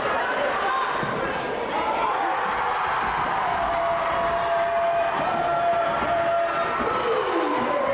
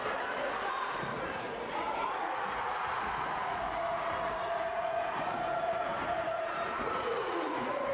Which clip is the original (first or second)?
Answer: first